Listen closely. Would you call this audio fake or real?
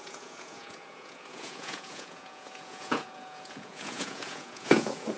fake